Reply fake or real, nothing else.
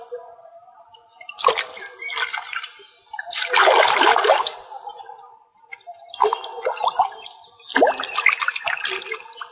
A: real